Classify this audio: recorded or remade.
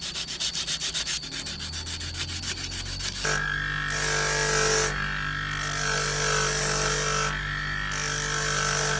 recorded